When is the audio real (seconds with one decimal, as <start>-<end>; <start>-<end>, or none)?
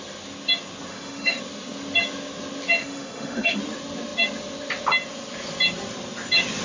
0.0-0.9; 1.4-2.8; 3.6-6.6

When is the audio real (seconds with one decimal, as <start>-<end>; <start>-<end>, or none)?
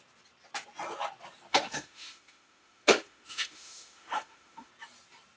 0.0-1.5; 4.7-5.4